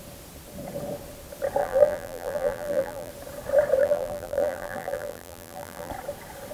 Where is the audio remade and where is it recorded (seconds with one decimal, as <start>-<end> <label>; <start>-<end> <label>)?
0.0-1.6 recorded; 1.6-3.1 remade; 3.1-3.8 recorded; 3.8-5.9 remade; 5.9-6.5 recorded